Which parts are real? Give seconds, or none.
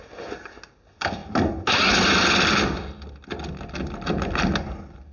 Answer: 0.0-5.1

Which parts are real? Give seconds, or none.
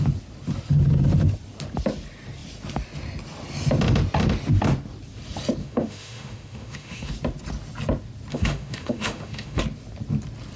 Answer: 0.0-5.6; 7.1-8.3; 9.6-10.6